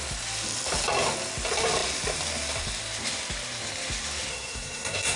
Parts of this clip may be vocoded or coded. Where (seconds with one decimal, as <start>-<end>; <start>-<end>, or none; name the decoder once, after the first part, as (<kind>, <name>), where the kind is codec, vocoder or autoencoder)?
4.3-5.2 (codec, SNAC)